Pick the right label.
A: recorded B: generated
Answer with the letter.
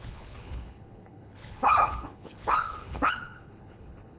B